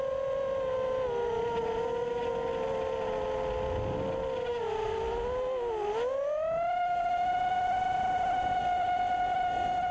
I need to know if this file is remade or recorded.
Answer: recorded